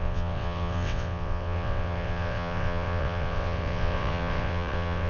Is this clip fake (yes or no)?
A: yes